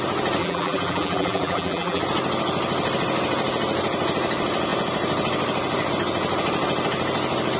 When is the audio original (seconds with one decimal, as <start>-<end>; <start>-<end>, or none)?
0.0-0.4; 2.0-7.6